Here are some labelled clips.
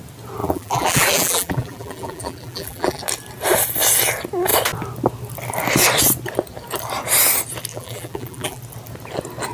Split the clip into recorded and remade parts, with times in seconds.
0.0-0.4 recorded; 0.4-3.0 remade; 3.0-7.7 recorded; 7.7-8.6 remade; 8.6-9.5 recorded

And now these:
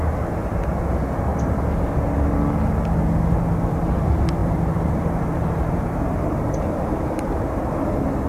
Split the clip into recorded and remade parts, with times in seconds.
0.0-4.4 recorded; 4.4-7.7 remade; 7.7-8.3 recorded

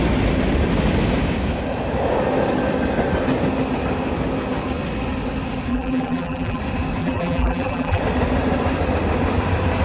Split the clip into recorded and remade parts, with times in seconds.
0.0-5.7 recorded; 5.7-6.6 remade; 6.6-7.0 recorded; 7.0-8.0 remade; 8.0-9.8 recorded

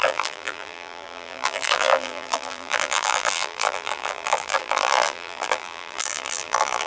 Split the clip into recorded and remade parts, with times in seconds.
0.0-6.9 remade